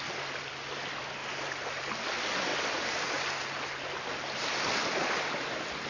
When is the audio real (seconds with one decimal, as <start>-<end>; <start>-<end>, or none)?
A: 0.0-5.9